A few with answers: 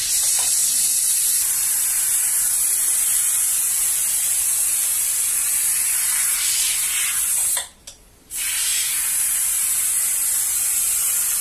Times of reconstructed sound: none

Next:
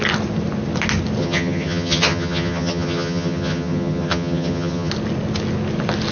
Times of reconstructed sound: 1.2-4.9

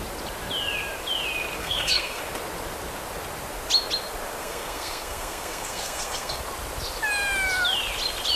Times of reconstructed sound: 1.6-2.2; 4.4-6.4